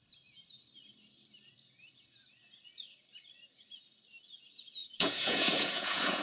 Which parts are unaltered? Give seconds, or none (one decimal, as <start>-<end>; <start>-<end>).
0.0-4.8